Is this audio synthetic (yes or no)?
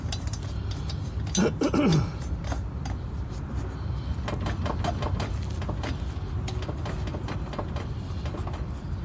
no